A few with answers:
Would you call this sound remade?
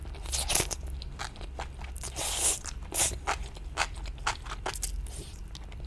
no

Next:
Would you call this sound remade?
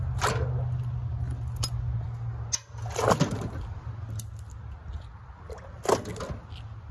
no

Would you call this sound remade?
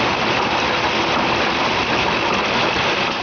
no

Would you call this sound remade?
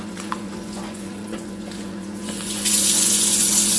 yes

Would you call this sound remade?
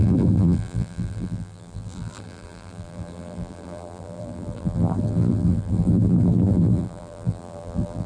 yes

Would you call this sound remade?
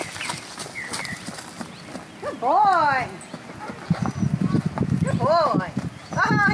no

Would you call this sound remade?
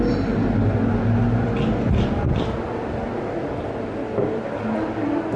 no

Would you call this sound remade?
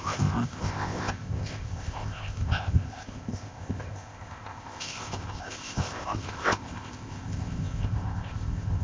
yes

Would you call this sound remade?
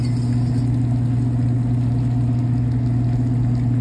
no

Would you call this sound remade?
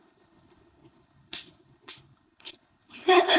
yes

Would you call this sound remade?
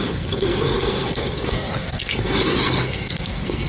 yes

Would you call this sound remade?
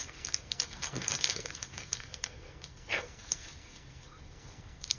yes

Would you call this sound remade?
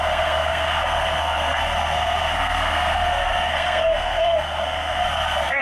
yes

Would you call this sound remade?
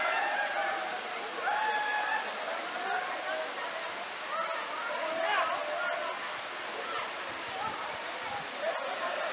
no